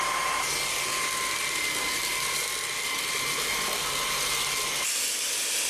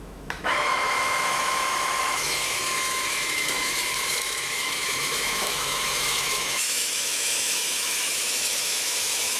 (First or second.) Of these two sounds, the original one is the first